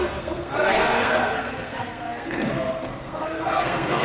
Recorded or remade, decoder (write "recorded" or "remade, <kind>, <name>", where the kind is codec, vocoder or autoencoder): remade, codec, SNAC